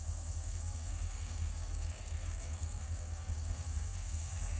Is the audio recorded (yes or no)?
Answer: no